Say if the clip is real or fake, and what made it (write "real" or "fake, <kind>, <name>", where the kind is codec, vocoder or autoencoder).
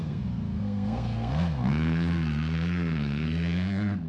fake, codec, SNAC